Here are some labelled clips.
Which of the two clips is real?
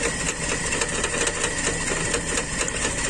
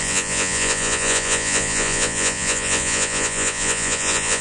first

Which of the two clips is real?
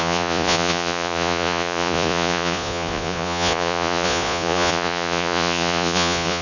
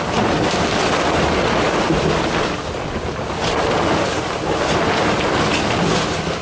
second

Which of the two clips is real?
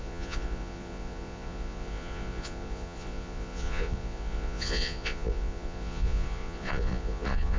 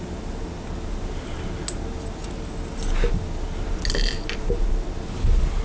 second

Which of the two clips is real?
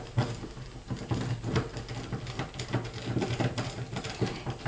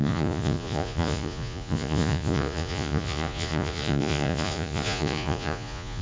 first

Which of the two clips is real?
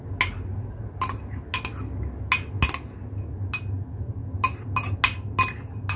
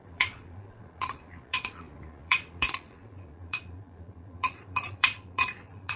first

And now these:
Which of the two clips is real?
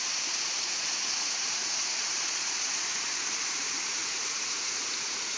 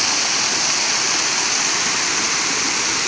second